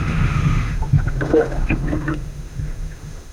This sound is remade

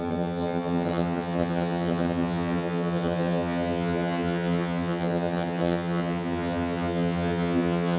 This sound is remade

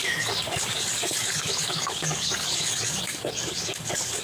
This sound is remade